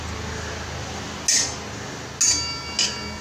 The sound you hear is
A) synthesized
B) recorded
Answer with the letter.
B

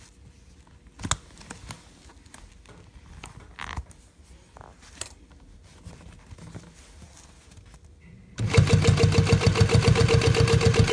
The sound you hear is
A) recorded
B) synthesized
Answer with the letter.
A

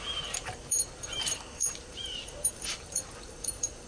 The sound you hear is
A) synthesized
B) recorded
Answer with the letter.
A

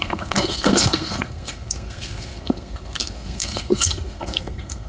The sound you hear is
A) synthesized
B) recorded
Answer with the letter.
A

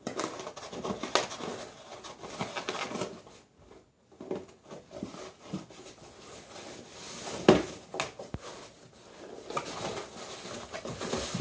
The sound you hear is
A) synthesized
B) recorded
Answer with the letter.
B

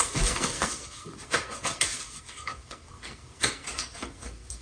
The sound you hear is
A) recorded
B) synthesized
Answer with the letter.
B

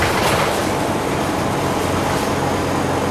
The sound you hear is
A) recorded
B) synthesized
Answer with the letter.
A